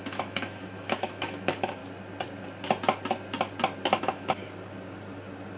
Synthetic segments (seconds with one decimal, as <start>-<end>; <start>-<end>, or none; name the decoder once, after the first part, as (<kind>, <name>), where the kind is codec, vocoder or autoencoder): 0.0-1.8 (autoencoder, DAC-VAE); 4.0-4.4